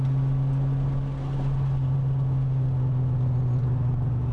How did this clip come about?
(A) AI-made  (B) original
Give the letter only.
B